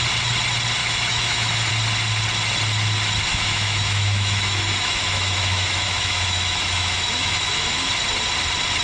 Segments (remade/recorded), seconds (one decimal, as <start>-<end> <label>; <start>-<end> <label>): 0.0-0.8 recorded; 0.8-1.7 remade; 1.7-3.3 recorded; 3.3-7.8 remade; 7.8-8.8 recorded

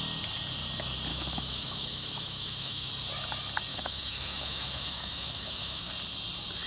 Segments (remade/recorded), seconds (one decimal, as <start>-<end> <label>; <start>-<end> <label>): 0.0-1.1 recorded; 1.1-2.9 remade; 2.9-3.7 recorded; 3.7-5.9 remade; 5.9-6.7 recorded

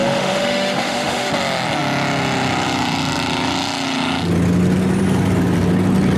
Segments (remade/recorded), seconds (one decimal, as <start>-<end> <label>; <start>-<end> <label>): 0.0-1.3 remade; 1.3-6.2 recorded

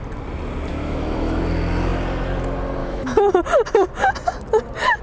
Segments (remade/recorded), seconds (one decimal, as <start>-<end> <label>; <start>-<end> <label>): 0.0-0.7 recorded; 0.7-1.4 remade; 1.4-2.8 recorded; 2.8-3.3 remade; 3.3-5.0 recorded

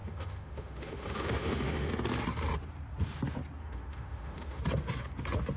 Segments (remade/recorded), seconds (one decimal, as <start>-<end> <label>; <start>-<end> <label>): 0.0-1.9 remade; 1.9-3.6 recorded; 3.6-4.6 remade; 4.6-5.6 recorded

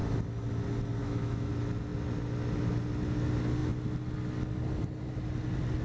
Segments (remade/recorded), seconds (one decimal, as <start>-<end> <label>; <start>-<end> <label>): 0.0-1.0 recorded; 1.0-1.5 remade; 1.5-5.8 recorded

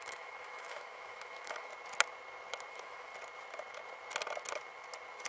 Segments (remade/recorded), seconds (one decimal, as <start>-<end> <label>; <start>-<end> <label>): 0.0-1.7 remade; 1.7-2.7 recorded; 2.7-3.1 remade; 3.1-5.3 recorded

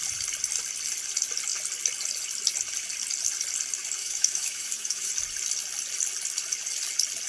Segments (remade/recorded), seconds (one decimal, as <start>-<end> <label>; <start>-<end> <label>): 0.0-4.0 recorded; 4.0-5.1 remade; 5.1-7.3 recorded